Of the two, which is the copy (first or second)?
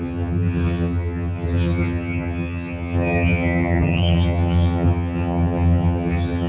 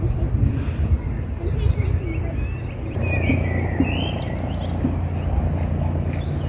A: first